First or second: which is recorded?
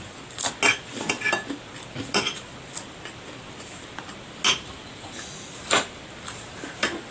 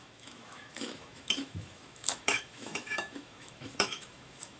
first